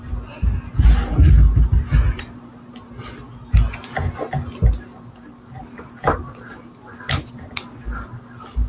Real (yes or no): yes